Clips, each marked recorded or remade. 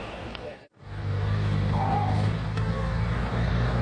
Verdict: remade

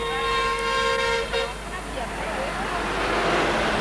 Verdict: recorded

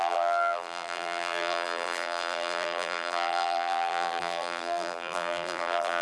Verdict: remade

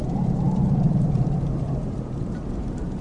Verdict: remade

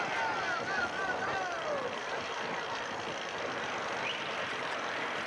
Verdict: recorded